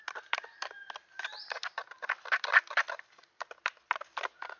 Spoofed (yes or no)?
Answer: no